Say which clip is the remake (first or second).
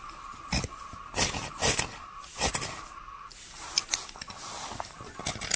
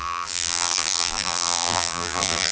second